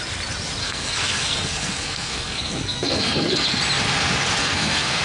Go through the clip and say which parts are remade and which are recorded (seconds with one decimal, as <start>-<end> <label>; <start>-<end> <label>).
0.0-0.6 recorded; 0.6-3.6 remade; 3.6-4.4 recorded; 4.4-5.0 remade